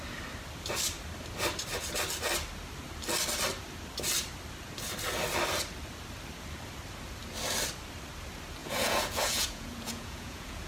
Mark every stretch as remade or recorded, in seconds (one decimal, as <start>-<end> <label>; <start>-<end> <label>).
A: 0.0-8.6 recorded; 8.6-10.7 remade

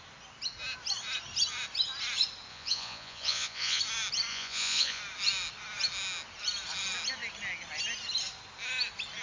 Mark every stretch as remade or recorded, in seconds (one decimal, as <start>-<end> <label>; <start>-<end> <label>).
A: 0.0-2.5 recorded; 2.5-3.8 remade; 3.8-4.3 recorded; 4.3-5.0 remade; 5.0-9.2 recorded

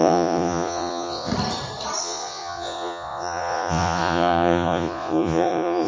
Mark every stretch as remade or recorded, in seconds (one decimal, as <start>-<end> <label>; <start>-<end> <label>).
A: 0.0-1.3 remade; 1.3-2.0 recorded; 2.0-5.9 remade

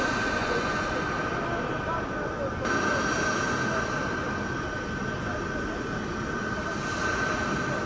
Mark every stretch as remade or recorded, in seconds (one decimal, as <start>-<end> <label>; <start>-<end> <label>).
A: 0.0-0.4 recorded; 0.4-0.9 remade; 0.9-7.9 recorded

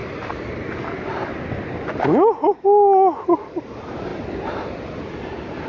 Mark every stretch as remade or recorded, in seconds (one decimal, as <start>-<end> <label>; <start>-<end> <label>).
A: 0.0-5.7 recorded

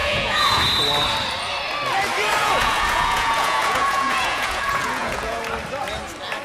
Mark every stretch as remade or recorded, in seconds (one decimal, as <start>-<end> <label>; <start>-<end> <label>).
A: 0.0-0.6 remade; 0.6-2.4 recorded; 2.4-5.4 remade; 5.4-6.4 recorded

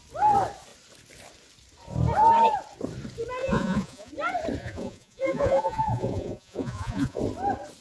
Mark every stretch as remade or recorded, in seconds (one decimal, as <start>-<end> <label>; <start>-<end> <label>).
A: 0.0-3.4 recorded; 3.4-4.1 remade; 4.1-4.6 recorded; 4.6-7.2 remade; 7.2-7.8 recorded